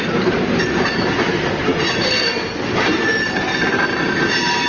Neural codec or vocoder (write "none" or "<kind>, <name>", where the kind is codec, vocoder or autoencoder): none